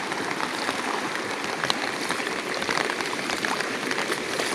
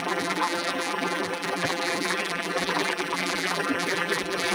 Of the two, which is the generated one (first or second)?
second